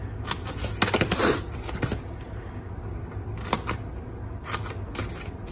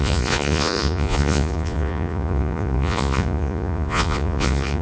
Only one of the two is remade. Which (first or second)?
second